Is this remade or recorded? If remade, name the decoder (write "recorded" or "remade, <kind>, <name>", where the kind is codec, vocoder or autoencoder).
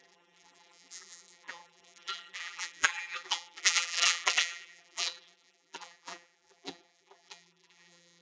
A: remade, vocoder, BigVGAN v2